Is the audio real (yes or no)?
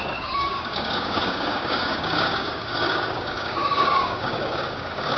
no